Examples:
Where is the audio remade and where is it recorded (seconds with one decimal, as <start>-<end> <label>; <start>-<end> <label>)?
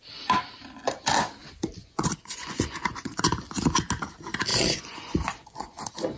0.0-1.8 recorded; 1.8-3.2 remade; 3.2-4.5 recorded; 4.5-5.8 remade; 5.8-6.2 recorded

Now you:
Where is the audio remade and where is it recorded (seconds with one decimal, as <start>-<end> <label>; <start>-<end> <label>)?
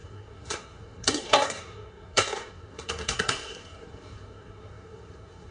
0.0-5.5 remade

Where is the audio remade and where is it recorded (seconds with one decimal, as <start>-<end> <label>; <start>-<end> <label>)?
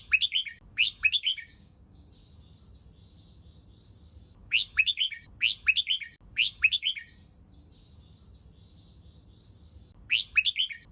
0.0-0.7 recorded; 0.7-2.1 remade; 2.1-4.4 recorded; 4.4-5.3 remade; 5.3-6.3 recorded; 6.3-6.9 remade; 6.9-10.9 recorded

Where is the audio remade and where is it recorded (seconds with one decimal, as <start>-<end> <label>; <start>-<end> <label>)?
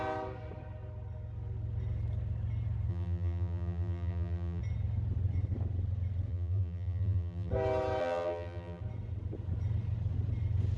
0.0-2.9 recorded; 2.9-4.6 remade; 4.6-6.3 recorded; 6.3-7.5 remade; 7.5-8.0 recorded; 8.0-8.8 remade; 8.8-10.8 recorded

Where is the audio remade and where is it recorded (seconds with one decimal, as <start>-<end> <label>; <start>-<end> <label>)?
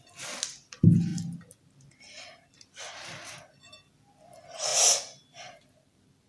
0.0-6.3 recorded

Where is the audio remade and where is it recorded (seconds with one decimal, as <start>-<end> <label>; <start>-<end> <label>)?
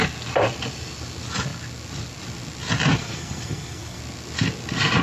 0.0-3.0 recorded; 3.0-4.0 remade; 4.0-5.0 recorded